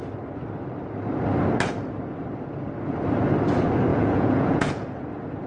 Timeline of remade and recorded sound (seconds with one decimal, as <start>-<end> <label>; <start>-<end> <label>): 0.0-3.9 recorded; 3.9-5.0 remade; 5.0-5.5 recorded